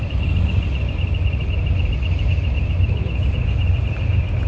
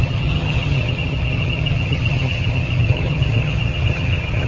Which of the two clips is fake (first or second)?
second